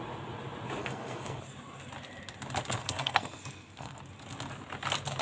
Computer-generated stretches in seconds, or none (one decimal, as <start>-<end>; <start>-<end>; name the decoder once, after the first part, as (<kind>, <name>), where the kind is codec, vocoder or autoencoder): 0.8-1.4 (codec, SNAC); 2.8-4.0